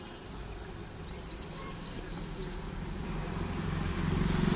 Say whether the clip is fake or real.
fake